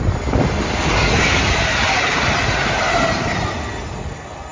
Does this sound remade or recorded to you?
recorded